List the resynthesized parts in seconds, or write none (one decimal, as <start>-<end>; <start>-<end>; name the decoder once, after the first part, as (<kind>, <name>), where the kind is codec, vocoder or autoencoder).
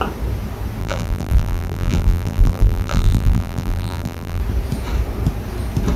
0.8-4.4 (vocoder, BigVGAN v2)